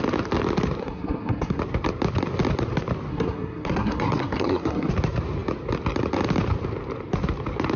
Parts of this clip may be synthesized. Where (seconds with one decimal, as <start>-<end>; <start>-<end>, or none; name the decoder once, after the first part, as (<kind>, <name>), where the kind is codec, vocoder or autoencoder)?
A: 0.8-1.6 (codec, SNAC); 3.1-4.9